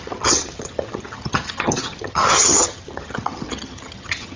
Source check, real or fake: fake